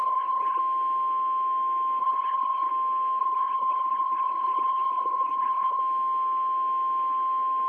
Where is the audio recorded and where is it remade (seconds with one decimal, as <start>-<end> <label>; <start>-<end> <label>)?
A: 0.0-0.6 remade; 0.6-2.0 recorded; 2.0-2.7 remade; 2.7-3.2 recorded; 3.2-5.8 remade; 5.8-7.7 recorded